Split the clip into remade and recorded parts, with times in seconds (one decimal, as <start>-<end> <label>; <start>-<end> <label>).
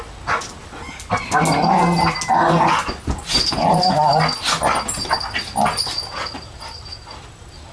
0.0-7.7 recorded